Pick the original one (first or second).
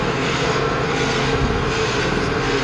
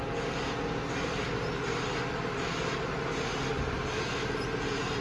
second